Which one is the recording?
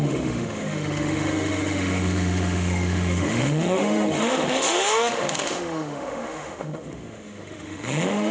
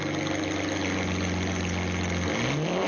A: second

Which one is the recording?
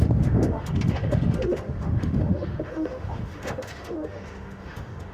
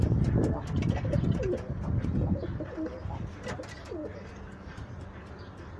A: second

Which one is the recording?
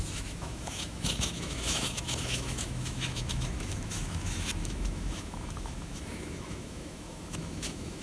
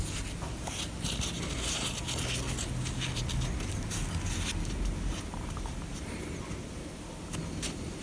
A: second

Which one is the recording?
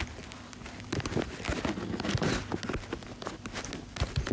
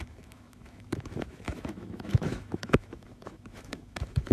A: first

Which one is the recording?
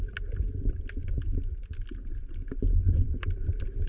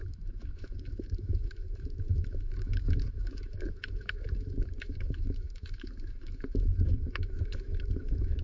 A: first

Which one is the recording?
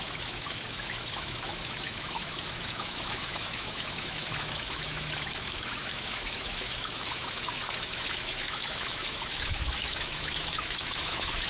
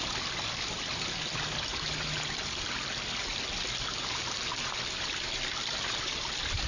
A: second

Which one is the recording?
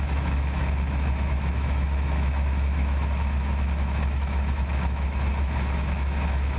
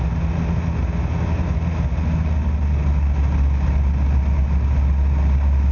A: second